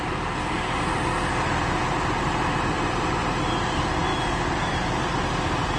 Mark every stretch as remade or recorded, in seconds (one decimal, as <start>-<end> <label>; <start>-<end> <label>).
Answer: 0.0-5.8 recorded